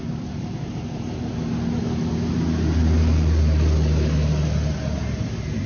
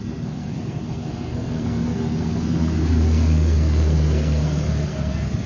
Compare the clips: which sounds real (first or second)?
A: first